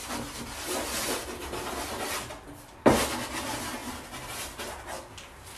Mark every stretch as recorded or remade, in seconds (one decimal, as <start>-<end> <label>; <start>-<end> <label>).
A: 0.0-5.6 recorded